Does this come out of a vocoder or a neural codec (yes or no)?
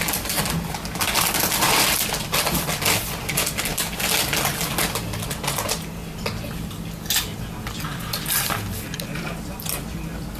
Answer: no